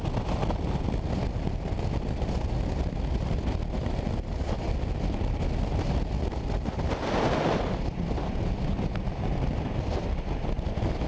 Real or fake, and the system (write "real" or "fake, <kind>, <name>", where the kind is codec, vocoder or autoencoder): real